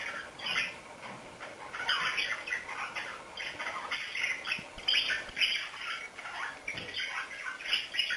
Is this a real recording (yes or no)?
yes